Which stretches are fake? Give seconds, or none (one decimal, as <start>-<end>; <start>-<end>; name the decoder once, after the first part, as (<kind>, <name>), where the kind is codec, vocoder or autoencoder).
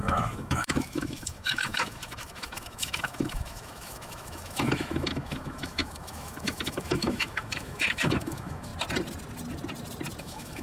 0.0-8.7 (autoencoder, DAC-VAE); 10.2-10.6